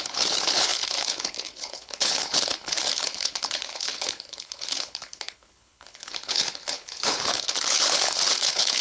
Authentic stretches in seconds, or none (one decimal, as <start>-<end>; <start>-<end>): none